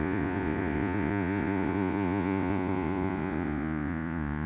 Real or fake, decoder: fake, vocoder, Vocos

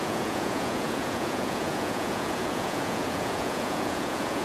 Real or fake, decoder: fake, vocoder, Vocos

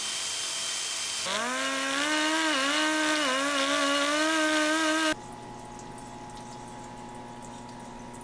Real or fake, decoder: real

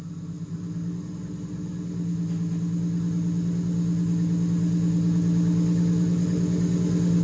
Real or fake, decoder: real